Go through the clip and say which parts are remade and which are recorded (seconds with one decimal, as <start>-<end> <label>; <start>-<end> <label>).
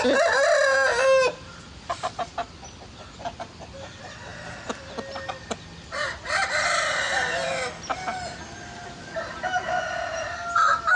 0.0-11.0 recorded